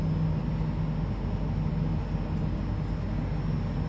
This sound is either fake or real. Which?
real